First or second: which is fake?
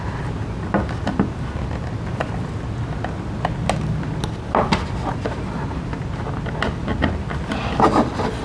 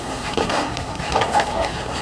second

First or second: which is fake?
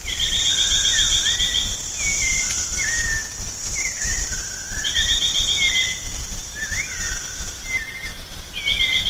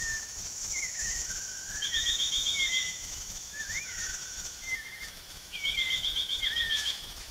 second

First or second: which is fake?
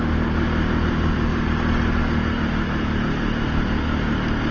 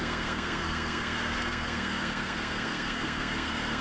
second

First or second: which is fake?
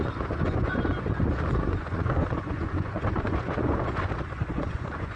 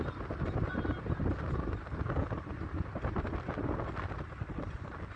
first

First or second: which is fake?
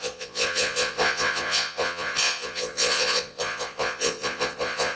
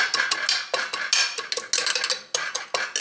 first